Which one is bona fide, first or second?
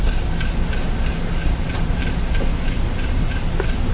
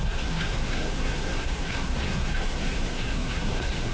first